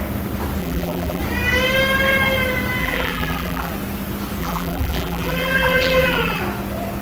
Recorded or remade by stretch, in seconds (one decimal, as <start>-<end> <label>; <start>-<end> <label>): 0.0-0.6 recorded; 0.6-1.2 remade; 1.2-2.8 recorded; 2.8-3.7 remade; 3.7-4.4 recorded; 4.4-6.4 remade; 6.4-7.0 recorded